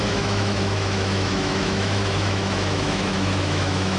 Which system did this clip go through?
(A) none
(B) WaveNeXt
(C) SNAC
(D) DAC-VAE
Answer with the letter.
D